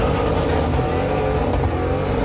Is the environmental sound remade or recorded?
recorded